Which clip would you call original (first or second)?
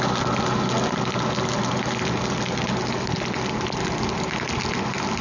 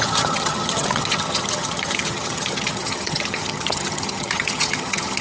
first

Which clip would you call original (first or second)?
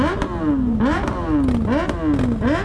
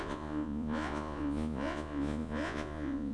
first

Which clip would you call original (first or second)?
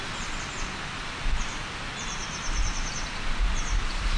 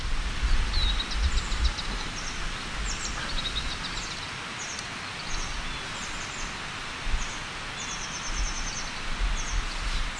second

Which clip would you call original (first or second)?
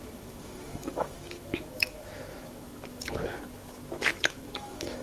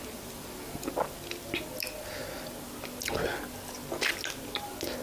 second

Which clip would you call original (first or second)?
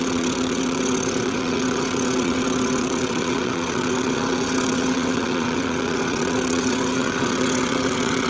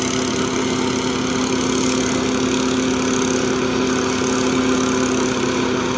second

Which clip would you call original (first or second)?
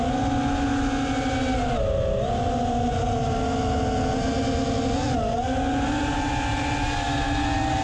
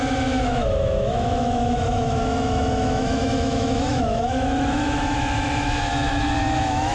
first